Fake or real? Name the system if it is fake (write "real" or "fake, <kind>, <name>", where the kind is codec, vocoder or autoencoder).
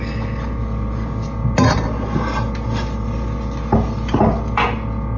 real